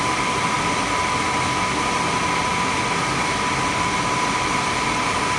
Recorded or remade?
recorded